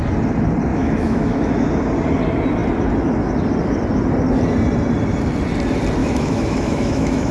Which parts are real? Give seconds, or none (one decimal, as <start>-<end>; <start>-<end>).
0.0-0.7; 1.4-6.0